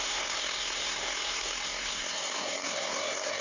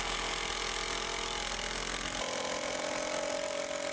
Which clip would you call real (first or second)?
second